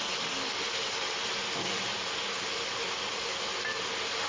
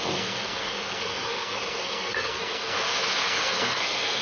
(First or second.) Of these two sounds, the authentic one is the first